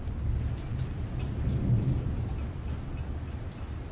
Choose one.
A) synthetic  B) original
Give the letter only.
B